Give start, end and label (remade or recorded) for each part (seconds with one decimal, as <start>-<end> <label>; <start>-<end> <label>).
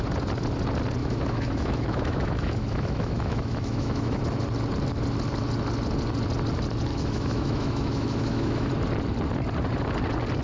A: 0.0-1.0 recorded; 1.0-4.2 remade; 4.2-6.9 recorded; 6.9-8.7 remade; 8.7-10.4 recorded